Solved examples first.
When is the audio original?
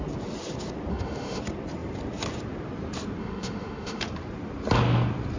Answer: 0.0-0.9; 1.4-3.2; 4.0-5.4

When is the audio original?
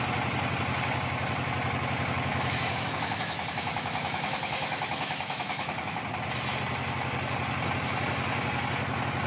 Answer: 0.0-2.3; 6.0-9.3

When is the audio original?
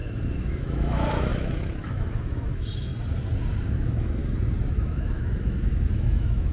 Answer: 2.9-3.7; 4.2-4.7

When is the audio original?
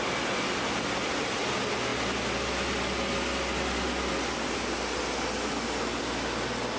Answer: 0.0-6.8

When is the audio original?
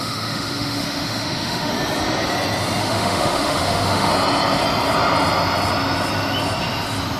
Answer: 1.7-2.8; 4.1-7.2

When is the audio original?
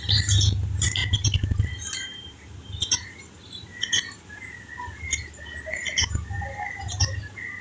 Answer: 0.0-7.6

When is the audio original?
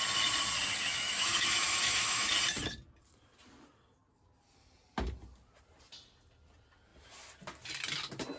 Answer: 0.0-0.9; 2.3-8.4